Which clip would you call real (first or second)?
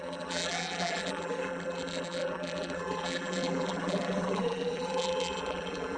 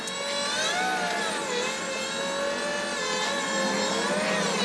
second